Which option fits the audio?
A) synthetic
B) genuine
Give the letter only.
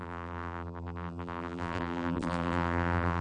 A